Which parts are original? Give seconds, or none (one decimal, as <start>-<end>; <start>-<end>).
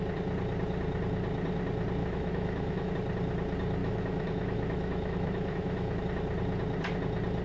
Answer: 0.0-2.0; 2.9-3.8; 6.0-7.4